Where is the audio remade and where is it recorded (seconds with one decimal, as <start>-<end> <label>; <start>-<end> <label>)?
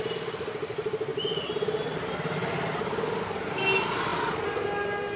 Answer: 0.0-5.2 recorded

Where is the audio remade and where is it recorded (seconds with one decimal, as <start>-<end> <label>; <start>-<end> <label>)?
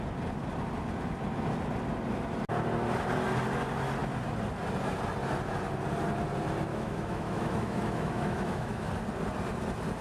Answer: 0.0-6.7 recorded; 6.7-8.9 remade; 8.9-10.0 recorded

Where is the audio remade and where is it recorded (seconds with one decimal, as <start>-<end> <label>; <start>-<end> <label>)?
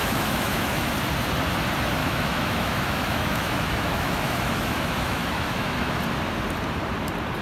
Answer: 0.0-0.9 remade; 0.9-2.0 recorded; 2.0-6.0 remade; 6.0-7.4 recorded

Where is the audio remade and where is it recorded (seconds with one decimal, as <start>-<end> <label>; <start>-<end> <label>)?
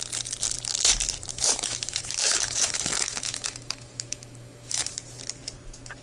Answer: 0.0-1.3 recorded; 1.3-4.9 remade; 4.9-6.0 recorded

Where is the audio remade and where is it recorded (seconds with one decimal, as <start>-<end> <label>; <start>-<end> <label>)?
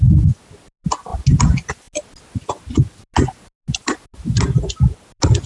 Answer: 0.0-5.5 recorded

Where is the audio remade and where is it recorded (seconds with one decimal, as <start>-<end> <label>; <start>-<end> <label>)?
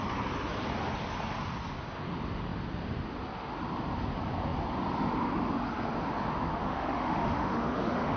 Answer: 0.0-6.6 recorded; 6.6-8.2 remade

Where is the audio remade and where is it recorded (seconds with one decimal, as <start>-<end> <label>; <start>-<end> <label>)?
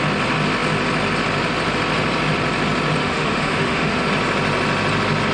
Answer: 0.0-3.0 recorded; 3.0-4.1 remade; 4.1-5.3 recorded